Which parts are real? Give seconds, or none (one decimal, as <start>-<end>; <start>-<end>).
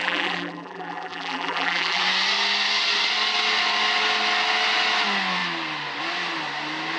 2.0-7.0